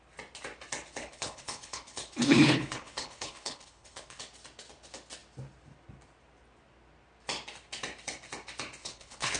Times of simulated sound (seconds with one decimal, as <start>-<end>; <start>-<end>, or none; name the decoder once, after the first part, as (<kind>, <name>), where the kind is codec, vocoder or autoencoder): 1.0-4.2 (codec, HILCodec); 8.8-9.4